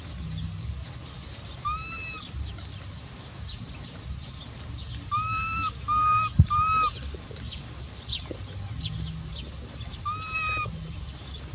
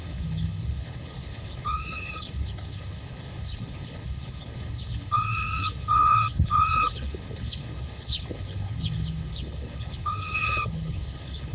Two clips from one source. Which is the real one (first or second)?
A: first